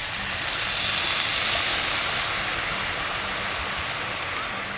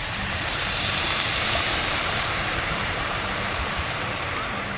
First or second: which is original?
first